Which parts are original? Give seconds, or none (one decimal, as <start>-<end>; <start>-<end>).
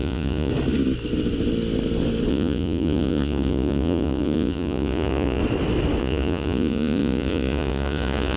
0.5-2.3; 5.4-6.0